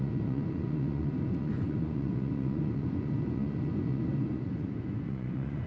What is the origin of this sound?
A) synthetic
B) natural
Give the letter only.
A